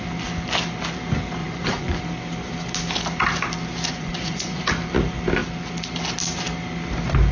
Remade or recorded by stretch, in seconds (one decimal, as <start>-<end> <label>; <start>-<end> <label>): 0.0-1.4 recorded; 1.4-2.0 remade; 2.0-3.9 recorded; 3.9-4.6 remade; 4.6-7.3 recorded